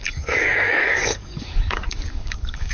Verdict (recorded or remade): remade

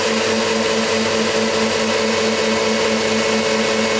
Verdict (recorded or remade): recorded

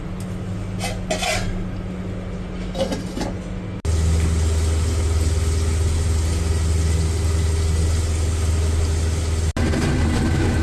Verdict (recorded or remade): recorded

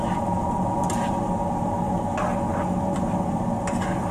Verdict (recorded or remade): recorded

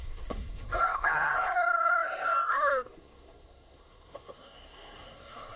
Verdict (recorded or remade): remade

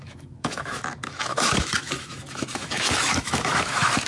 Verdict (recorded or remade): remade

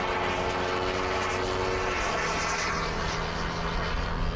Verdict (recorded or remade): recorded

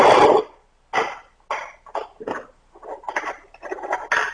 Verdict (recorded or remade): recorded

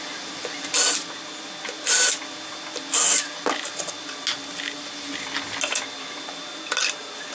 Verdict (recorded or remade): recorded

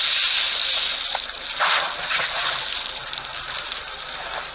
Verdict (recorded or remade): recorded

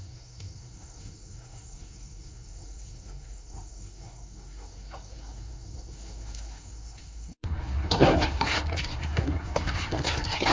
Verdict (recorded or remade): remade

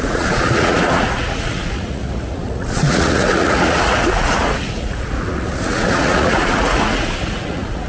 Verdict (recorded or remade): remade